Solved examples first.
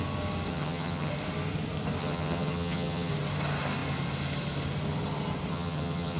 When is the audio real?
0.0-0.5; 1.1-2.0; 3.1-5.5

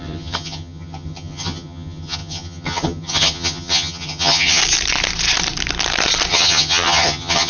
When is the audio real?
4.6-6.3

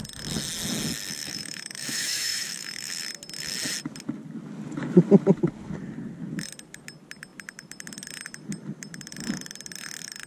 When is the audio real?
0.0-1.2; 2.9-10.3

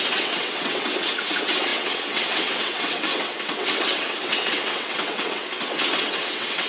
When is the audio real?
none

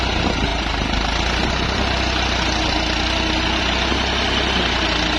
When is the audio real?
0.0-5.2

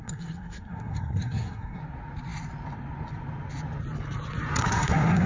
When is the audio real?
1.8-4.6